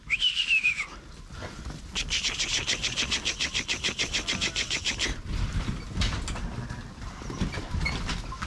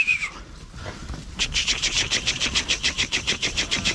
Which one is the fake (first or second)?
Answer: second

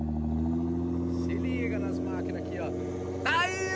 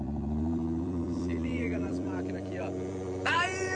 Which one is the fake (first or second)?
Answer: second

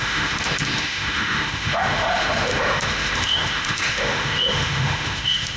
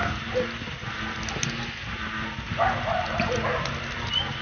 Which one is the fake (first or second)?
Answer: first